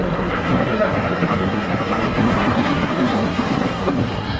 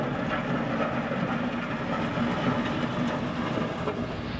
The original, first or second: second